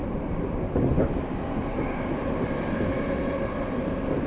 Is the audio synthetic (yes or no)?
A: no